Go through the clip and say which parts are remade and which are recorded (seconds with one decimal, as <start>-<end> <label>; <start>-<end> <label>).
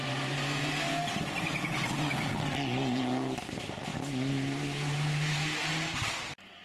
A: 0.0-2.5 recorded; 2.5-3.9 remade; 3.9-5.7 recorded; 5.7-6.6 remade